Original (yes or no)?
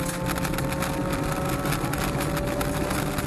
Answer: yes